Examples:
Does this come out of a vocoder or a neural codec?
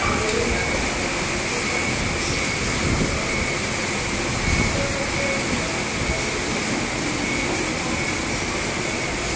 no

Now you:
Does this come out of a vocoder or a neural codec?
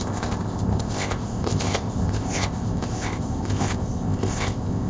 yes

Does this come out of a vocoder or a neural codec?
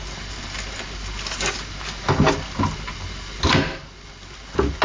no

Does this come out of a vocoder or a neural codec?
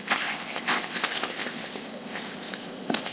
yes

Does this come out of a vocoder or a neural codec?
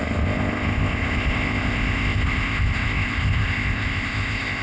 yes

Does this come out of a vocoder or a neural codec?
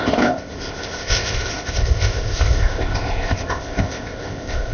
yes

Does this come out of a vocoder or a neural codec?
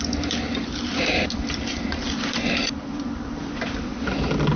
no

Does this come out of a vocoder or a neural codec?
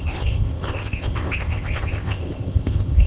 yes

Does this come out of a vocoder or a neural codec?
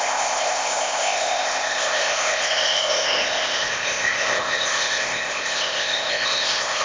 yes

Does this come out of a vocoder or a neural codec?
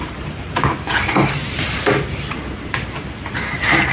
no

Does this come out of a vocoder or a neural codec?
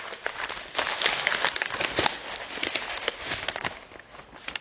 no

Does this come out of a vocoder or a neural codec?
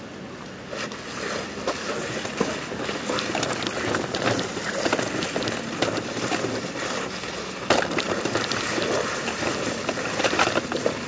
no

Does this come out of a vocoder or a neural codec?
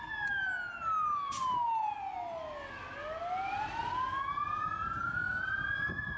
no